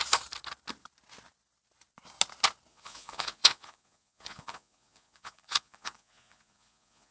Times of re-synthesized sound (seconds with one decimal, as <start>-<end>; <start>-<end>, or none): 2.7-7.1

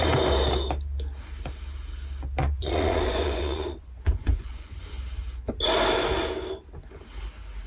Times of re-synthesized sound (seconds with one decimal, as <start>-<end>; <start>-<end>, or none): 2.4-4.8

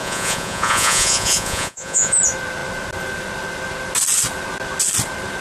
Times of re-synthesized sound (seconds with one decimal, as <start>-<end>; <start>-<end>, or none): 0.0-2.2

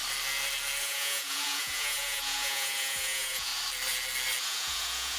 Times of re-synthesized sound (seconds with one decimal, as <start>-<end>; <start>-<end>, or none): 0.8-3.5; 4.4-5.2